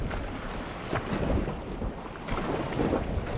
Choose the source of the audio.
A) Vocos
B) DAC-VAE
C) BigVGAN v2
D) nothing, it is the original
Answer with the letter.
D